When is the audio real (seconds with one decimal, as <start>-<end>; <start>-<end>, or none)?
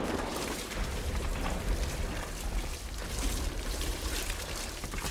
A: 1.3-3.5